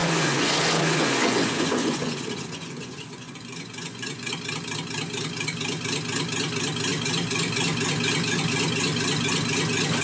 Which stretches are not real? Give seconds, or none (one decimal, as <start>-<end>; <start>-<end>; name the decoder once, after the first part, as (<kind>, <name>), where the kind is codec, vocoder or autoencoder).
0.0-4.3 (vocoder, Vocos)

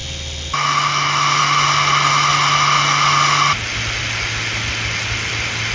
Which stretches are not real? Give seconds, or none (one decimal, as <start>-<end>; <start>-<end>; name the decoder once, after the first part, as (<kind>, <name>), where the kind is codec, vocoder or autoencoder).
none